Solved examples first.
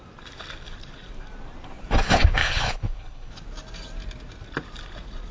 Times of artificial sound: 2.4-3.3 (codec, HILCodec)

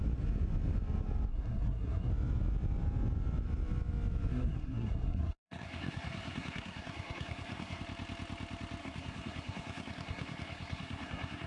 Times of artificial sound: 1.3-2.1 (codec, SNAC); 4.3-7.8; 8.8-11.5

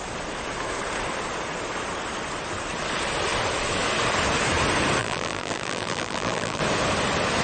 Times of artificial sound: 5.0-6.6 (vocoder, BigVGAN v2)

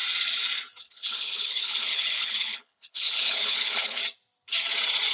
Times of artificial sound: 0.8-4.0 (codec, HILCodec)

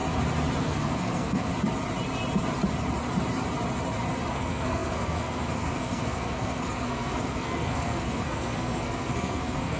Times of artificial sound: 0.6-1.5 (codec, SNAC); 4.3-9.8